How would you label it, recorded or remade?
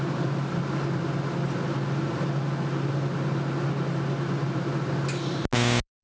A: recorded